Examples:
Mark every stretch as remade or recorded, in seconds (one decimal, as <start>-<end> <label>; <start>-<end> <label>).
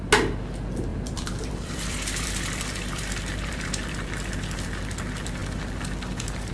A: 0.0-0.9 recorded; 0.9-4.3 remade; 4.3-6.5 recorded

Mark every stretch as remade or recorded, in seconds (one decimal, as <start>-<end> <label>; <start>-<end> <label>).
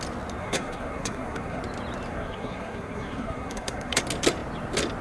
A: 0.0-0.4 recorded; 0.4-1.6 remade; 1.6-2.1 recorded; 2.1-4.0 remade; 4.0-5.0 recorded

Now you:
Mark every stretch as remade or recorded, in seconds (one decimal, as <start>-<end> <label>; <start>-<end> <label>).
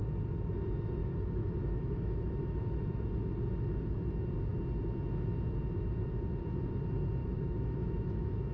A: 0.0-1.0 recorded; 1.0-2.8 remade; 2.8-7.2 recorded; 7.2-8.5 remade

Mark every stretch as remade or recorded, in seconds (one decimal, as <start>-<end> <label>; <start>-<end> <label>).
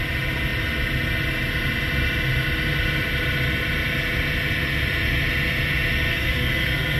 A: 0.0-6.1 recorded; 6.1-7.0 remade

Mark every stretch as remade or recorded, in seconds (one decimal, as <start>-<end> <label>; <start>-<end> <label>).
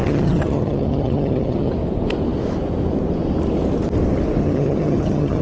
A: 0.0-1.7 remade; 1.7-4.4 recorded; 4.4-5.4 remade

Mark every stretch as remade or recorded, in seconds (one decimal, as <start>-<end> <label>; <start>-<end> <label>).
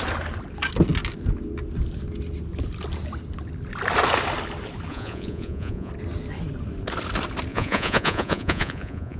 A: 0.0-4.9 recorded; 4.9-5.9 remade; 5.9-7.5 recorded; 7.5-9.2 remade